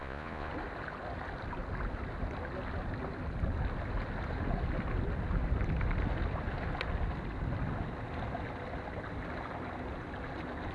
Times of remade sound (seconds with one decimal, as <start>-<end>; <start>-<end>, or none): 0.0-0.5